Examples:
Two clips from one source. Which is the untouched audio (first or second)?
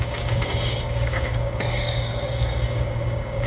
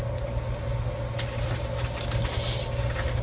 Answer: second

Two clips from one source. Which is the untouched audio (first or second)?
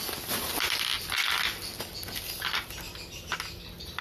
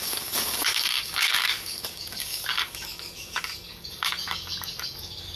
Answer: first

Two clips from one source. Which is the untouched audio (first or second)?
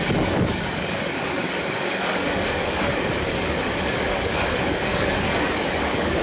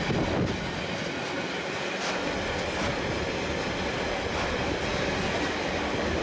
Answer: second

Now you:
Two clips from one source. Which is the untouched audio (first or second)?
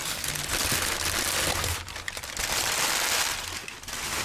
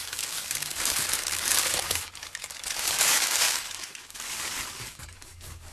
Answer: first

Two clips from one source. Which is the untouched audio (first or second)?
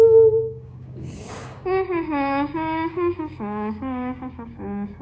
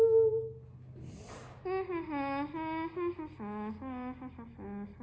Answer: second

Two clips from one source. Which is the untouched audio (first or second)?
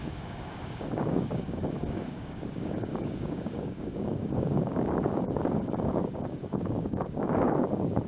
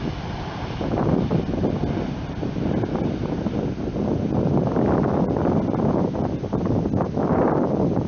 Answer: second